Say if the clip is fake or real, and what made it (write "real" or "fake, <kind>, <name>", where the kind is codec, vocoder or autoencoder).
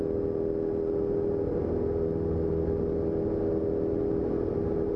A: real